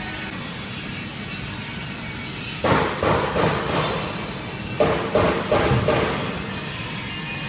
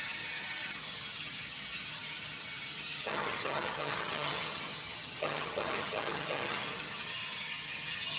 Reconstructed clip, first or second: second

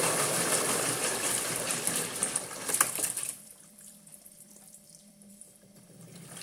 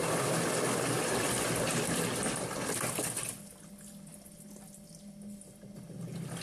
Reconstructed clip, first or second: first